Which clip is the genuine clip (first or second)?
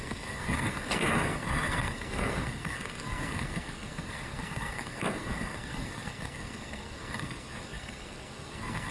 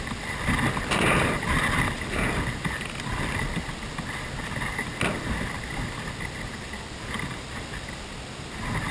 second